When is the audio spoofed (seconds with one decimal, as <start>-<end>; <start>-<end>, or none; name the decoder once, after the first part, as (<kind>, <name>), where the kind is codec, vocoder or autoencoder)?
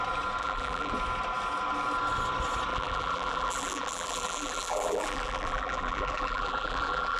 0.4-0.9 (vocoder, BigVGAN v2); 2.7-7.2